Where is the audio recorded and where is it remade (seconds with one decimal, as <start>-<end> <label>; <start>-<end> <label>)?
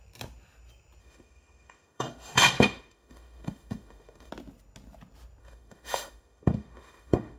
0.0-1.0 recorded; 1.0-4.3 remade; 4.3-5.4 recorded; 5.4-7.4 remade